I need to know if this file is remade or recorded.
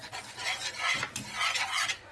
remade